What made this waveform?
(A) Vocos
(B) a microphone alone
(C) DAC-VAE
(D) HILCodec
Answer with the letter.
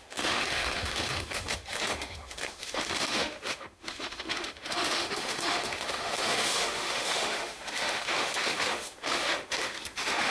C